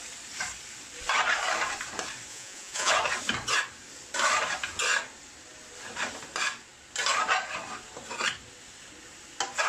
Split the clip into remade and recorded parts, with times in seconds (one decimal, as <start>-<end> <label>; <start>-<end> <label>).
0.0-2.3 recorded; 2.3-2.9 remade; 2.9-9.7 recorded